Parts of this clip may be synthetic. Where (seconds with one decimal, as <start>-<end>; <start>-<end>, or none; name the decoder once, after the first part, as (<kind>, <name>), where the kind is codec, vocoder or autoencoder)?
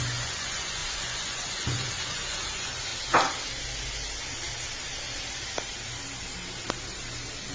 0.0-2.9 (vocoder, Vocos)